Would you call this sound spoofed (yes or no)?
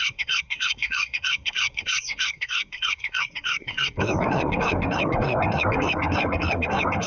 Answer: yes